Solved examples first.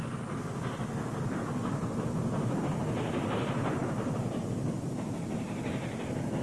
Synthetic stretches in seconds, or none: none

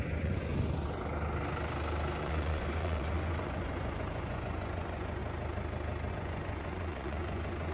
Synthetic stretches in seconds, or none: 0.0-0.5 (vocoder, Vocos); 2.2-5.2; 6.1-7.7

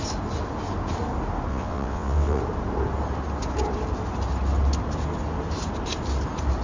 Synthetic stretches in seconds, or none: 1.5-2.4 (vocoder, WaveNeXt)

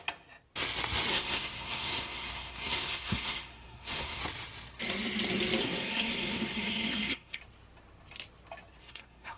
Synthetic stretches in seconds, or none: 1.1-4.2 (codec, SNAC); 5.6-7.4; 8.8-9.4

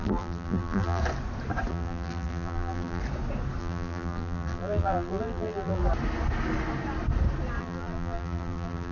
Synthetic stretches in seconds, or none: 0.0-1.0 (vocoder, BigVGAN v2); 1.7-3.0; 3.6-5.8; 7.6-8.9

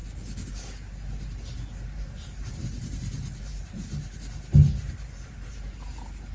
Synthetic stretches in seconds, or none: none